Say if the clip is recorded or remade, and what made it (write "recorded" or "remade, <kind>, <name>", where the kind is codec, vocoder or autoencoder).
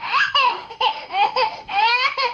remade, autoencoder, DAC-VAE